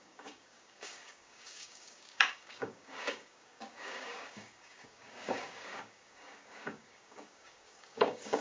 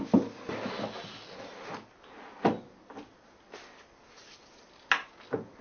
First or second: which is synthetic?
first